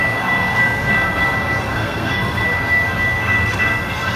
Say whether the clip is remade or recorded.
remade